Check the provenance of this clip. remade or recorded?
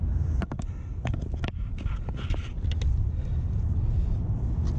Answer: recorded